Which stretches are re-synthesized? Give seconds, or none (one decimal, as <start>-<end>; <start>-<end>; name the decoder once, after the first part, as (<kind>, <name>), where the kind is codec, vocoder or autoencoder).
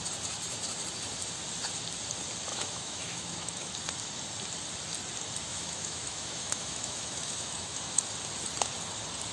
2.5-3.7 (autoencoder, DAC-VAE); 5.5-8.0